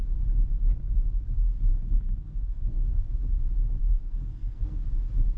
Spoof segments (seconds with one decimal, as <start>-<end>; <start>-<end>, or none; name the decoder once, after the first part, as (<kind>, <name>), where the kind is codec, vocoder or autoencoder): 1.7-3.1 (codec, SNAC); 3.8-4.8